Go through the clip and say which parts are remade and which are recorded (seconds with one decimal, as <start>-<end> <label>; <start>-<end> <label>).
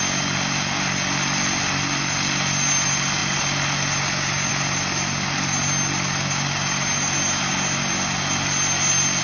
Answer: 0.0-9.2 recorded